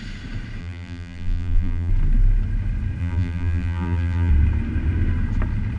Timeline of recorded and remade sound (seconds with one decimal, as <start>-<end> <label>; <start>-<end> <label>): 0.0-0.6 recorded; 0.6-1.9 remade; 1.9-3.0 recorded; 3.0-4.3 remade; 4.3-5.8 recorded